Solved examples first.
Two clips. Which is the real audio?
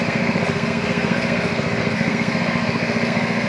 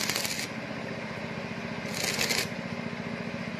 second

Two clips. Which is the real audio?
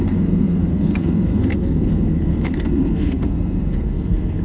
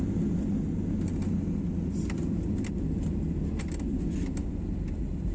second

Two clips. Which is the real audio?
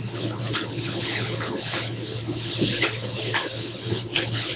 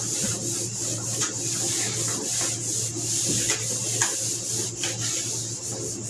second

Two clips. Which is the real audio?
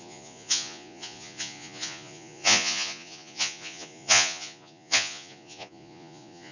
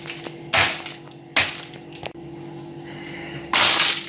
second